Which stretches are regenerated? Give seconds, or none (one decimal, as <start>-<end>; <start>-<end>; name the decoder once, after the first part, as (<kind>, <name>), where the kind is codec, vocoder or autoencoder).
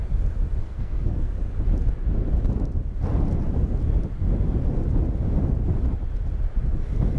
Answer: 0.6-1.3 (codec, SNAC)